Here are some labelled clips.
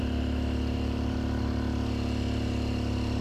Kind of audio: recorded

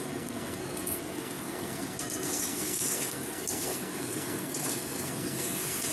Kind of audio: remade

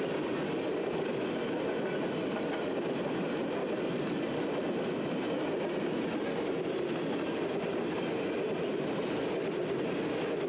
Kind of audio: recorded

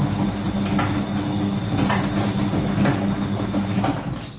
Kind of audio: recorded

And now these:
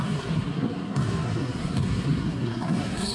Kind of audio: remade